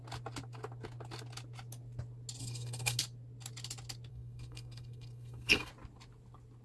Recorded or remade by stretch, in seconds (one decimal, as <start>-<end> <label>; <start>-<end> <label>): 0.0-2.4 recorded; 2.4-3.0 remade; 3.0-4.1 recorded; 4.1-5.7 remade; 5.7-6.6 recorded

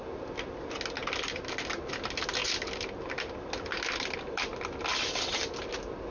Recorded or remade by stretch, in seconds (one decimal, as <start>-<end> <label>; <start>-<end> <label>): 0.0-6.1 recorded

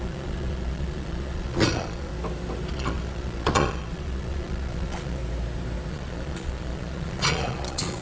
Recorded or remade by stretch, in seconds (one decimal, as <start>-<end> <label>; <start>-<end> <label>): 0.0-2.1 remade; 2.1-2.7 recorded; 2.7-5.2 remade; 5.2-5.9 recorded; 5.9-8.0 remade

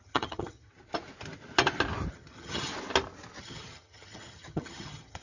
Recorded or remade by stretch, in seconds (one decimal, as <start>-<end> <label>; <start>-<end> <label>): 0.0-0.7 remade; 0.7-2.1 recorded; 2.1-2.7 remade; 2.7-3.4 recorded; 3.4-5.2 remade